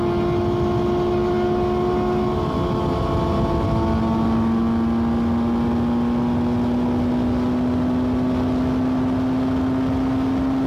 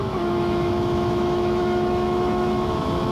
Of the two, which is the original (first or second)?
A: first